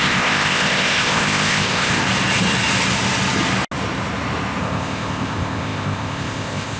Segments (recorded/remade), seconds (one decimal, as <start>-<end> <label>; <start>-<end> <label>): 0.0-2.0 remade; 2.0-4.6 recorded; 4.6-6.8 remade